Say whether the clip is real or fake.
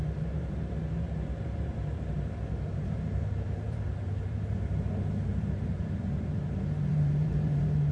fake